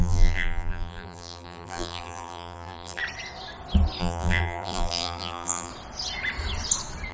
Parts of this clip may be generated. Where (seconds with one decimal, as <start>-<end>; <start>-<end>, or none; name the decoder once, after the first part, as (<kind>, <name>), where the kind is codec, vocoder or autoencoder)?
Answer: 0.0-3.0 (vocoder, BigVGAN v2); 4.0-5.7